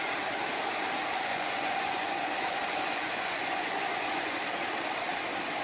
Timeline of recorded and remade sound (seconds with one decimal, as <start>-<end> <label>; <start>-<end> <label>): 0.0-1.3 recorded; 1.3-4.4 remade; 4.4-5.6 recorded